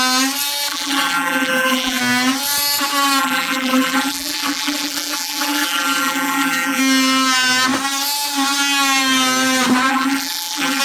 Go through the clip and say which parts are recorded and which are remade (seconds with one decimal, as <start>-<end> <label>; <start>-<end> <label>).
0.0-0.7 recorded; 0.7-2.0 remade; 2.0-3.2 recorded; 3.2-6.8 remade; 6.8-9.9 recorded; 9.9-10.8 remade